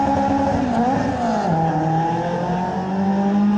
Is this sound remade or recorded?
recorded